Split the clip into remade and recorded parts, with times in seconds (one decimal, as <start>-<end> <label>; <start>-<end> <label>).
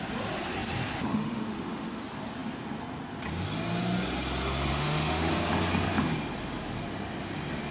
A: 0.0-1.1 recorded; 1.1-2.0 remade; 2.0-4.7 recorded; 4.7-5.3 remade; 5.3-7.7 recorded